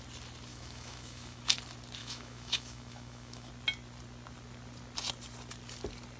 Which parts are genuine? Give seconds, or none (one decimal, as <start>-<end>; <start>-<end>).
0.0-0.5; 1.4-2.0; 3.5-6.2